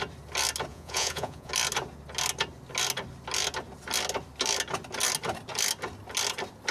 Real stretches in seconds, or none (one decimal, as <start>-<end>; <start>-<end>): 0.0-0.7; 1.5-6.7